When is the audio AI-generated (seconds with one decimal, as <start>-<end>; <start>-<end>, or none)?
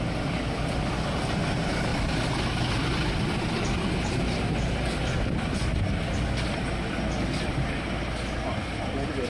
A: none